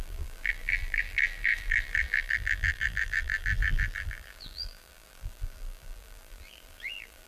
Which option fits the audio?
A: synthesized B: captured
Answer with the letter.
A